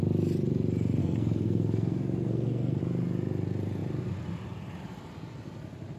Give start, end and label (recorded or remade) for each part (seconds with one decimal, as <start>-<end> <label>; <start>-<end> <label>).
0.0-1.0 recorded; 1.0-2.8 remade; 2.8-6.0 recorded